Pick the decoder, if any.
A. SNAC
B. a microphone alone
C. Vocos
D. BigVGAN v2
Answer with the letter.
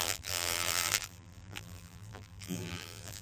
D